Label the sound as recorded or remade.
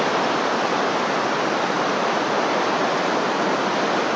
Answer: recorded